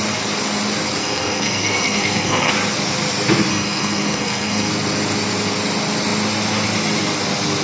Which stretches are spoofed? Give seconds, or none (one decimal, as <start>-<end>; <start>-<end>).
1.0-2.5; 3.5-4.7